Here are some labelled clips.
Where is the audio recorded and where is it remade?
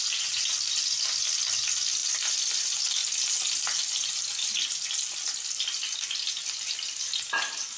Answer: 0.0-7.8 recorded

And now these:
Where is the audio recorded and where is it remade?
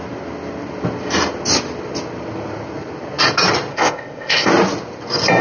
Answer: 0.0-3.7 recorded; 3.7-4.5 remade; 4.5-5.4 recorded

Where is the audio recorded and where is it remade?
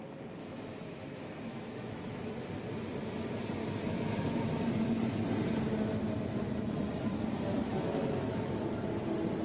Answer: 0.0-0.4 recorded; 0.4-2.3 remade; 2.3-3.6 recorded; 3.6-4.5 remade; 4.5-7.7 recorded; 7.7-8.7 remade; 8.7-9.4 recorded